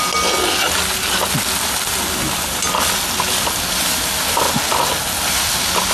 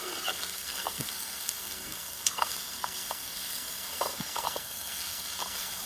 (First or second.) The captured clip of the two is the first